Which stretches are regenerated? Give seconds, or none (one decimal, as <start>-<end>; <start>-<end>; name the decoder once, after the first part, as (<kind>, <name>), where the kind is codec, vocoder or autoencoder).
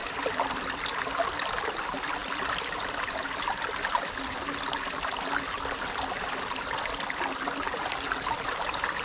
0.0-1.1 (vocoder, BigVGAN v2); 2.2-3.2